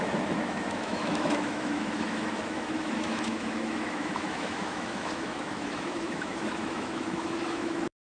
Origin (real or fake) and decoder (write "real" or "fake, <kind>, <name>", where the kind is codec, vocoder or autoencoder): fake, autoencoder, DAC-VAE